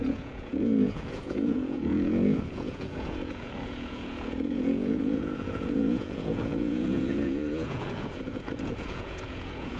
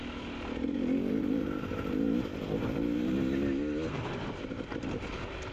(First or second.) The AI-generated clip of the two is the first